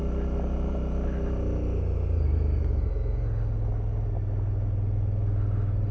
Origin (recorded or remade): recorded